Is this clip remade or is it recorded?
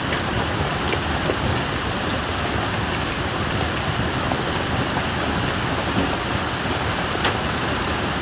recorded